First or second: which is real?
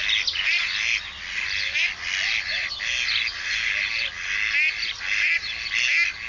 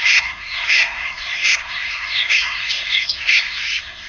first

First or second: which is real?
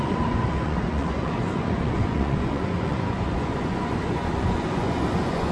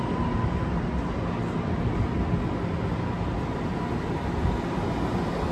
second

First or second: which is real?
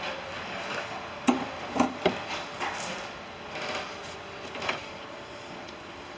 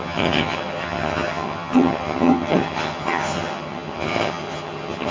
first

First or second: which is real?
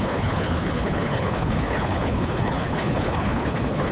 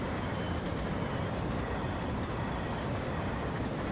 second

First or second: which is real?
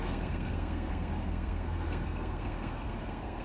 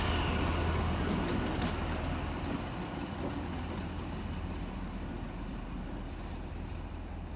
second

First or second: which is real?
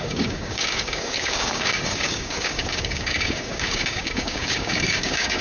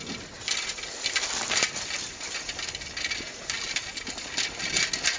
second